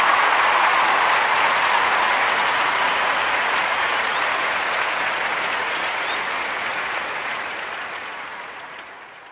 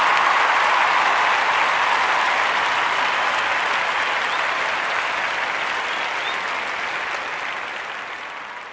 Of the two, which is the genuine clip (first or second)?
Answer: second